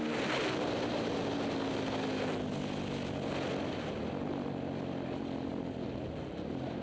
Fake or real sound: real